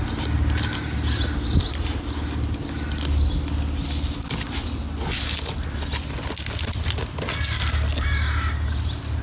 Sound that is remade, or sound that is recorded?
recorded